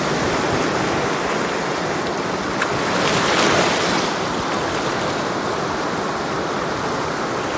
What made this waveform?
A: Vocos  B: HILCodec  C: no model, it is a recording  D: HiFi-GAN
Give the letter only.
C